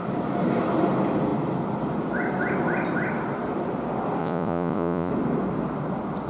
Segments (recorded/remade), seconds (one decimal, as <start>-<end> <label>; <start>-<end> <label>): 0.0-4.2 recorded; 4.2-5.1 remade; 5.1-6.3 recorded